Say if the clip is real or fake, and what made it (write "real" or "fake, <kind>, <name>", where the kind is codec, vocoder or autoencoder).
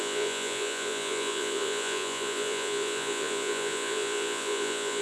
fake, vocoder, Vocos